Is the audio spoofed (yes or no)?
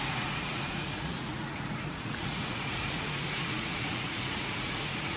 yes